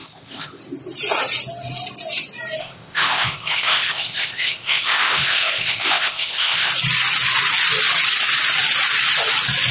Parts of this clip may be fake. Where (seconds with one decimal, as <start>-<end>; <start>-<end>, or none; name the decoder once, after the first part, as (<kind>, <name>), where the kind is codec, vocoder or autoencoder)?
0.0-0.6 (codec, ZipCodec); 2.6-6.7